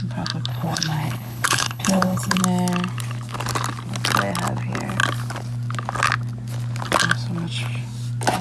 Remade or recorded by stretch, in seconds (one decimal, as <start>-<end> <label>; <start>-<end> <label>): 0.0-0.5 recorded; 0.5-2.4 remade; 2.4-8.4 recorded

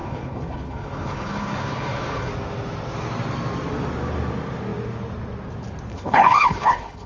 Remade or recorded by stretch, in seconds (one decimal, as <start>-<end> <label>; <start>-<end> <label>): 0.0-2.3 remade; 2.3-5.9 recorded; 5.9-7.1 remade

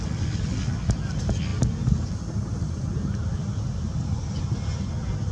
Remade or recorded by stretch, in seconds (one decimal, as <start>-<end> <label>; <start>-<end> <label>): 0.0-5.3 recorded

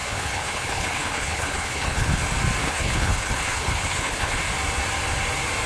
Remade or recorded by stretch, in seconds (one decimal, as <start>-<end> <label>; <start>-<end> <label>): 0.0-2.2 remade; 2.2-2.6 recorded; 2.6-4.4 remade; 4.4-5.7 recorded

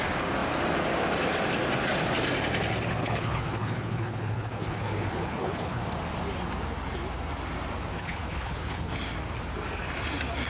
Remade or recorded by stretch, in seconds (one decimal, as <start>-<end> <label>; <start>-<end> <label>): 0.0-3.0 recorded; 3.0-5.8 remade; 5.8-7.9 recorded; 7.9-8.9 remade; 8.9-10.5 recorded

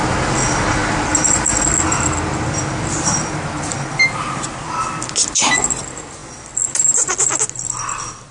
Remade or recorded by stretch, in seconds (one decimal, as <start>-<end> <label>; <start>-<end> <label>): 0.0-8.3 recorded

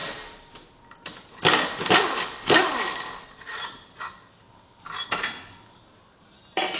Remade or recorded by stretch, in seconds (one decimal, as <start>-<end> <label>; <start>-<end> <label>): 0.0-6.8 recorded

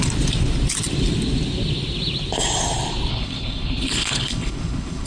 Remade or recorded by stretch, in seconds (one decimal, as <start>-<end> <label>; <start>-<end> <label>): 0.0-3.1 recorded; 3.1-5.1 remade